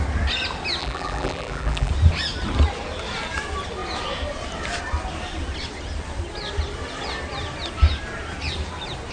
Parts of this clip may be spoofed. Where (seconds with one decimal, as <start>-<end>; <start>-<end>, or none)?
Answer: 0.8-1.9